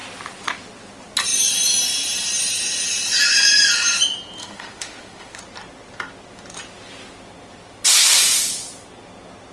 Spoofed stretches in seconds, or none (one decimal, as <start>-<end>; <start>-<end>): 4.4-5.4

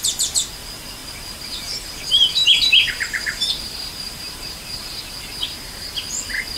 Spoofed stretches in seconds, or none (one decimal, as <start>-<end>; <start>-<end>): 1.0-5.0